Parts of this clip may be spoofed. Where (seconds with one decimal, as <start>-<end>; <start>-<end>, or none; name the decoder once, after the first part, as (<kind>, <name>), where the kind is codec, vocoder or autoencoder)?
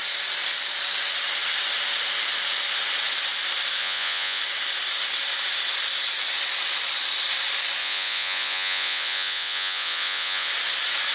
3.8-4.4 (vocoder, Vocos); 7.8-10.5